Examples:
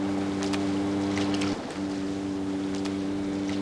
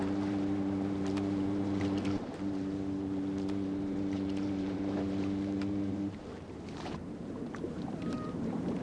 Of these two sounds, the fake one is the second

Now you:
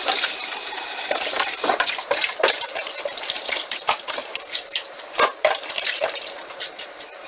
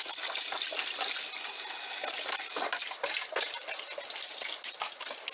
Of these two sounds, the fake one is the first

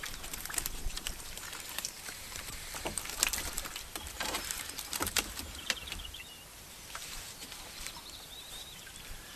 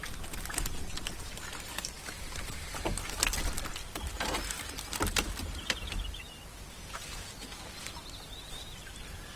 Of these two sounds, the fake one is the first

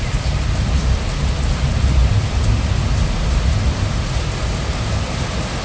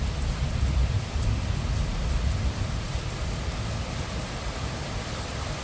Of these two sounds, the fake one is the second